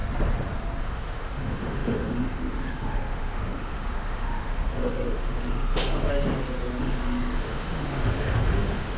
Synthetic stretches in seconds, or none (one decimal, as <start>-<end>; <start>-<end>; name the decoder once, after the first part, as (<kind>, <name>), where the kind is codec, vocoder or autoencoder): 0.8-6.1 (autoencoder, DAC-VAE); 6.8-9.0